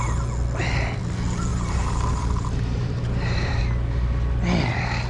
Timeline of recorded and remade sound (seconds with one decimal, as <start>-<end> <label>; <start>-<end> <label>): 0.0-1.5 recorded; 1.5-3.6 remade; 3.6-5.1 recorded